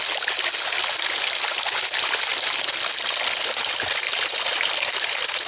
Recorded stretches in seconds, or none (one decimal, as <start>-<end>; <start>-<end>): 0.0-5.5